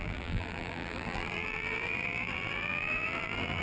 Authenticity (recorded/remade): remade